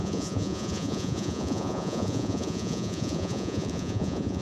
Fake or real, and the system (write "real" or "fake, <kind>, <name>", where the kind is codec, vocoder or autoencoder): fake, vocoder, Vocos